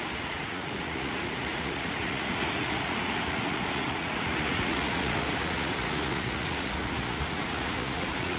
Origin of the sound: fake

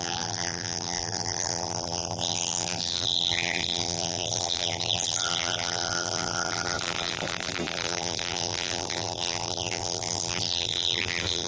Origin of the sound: fake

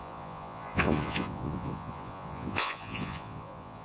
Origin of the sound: fake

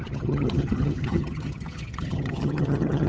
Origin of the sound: fake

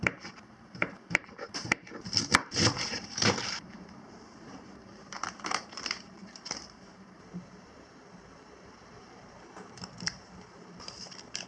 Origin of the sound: fake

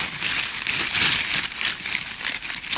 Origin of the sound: real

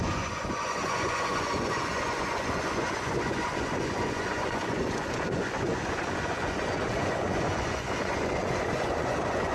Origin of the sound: fake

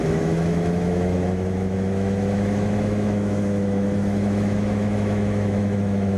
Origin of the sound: fake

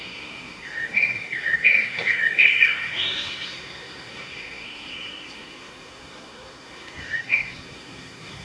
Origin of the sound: fake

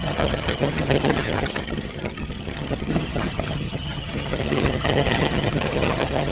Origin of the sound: fake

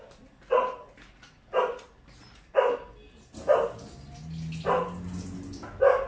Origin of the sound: real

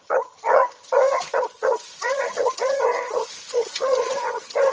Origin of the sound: fake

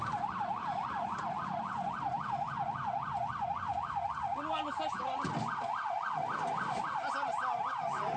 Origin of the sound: real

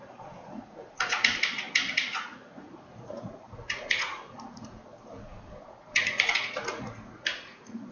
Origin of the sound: fake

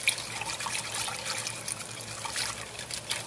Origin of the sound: real